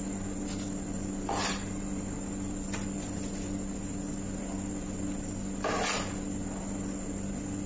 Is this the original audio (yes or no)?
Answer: yes